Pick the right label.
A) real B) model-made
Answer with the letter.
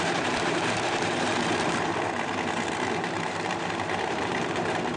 B